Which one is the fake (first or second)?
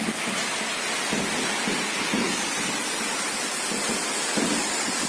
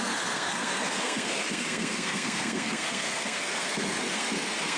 second